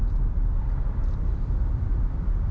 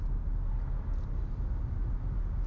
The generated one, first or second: first